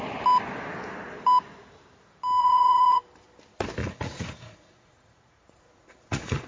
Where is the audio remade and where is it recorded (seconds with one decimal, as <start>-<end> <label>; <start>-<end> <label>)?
0.0-2.4 recorded; 2.4-3.0 remade; 3.0-3.8 recorded; 3.8-6.5 remade